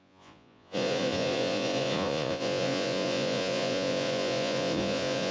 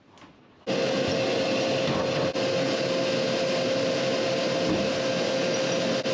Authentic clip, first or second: second